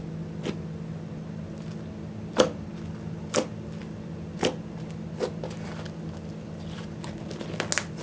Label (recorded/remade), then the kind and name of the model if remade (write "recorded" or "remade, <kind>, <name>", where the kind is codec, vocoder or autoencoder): recorded